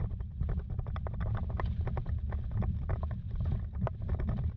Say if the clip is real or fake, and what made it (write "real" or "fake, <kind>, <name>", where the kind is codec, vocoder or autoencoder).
real